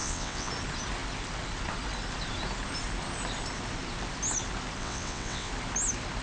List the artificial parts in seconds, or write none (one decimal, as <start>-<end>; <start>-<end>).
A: 0.0-0.5; 4.8-5.5